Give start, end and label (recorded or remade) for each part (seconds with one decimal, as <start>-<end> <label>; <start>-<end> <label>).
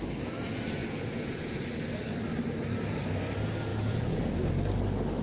0.0-0.8 recorded; 0.8-1.6 remade; 1.6-3.7 recorded; 3.7-4.2 remade; 4.2-5.2 recorded